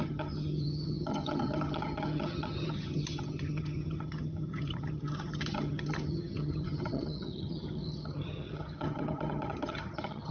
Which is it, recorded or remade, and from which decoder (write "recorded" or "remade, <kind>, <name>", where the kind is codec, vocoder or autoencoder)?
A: remade, vocoder, HiFi-GAN